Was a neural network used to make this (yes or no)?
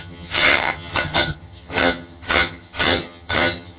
yes